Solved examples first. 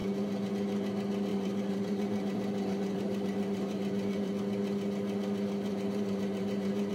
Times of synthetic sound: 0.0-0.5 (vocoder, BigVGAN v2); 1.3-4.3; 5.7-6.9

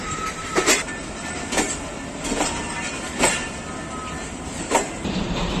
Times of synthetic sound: 0.0-0.5 (vocoder, BigVGAN v2); 3.9-5.6

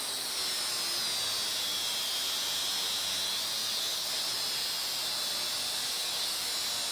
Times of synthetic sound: 6.0-6.5 (codec, DAC)

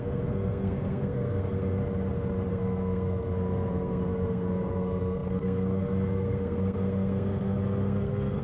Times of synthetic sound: 0.0-1.8 (codec, SNAC); 2.5-8.4

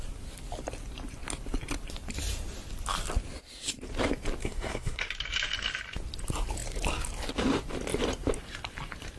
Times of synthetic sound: 4.4-5.1 (codec, SNAC)

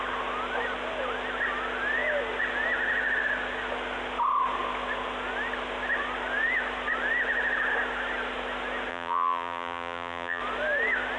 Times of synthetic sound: 8.9-10.4 (vocoder, BigVGAN v2)